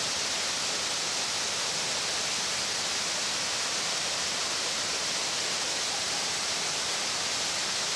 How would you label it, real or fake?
real